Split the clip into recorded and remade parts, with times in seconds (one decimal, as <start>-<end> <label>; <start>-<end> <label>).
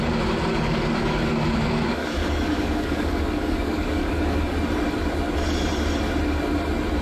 0.0-0.5 recorded; 0.5-4.5 remade; 4.5-7.0 recorded